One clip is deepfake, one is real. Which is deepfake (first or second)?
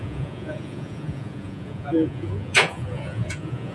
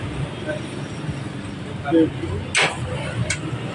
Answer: first